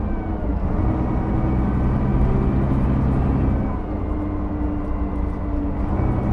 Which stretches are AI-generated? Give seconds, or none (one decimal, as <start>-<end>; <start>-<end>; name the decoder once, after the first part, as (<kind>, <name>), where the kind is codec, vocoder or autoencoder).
none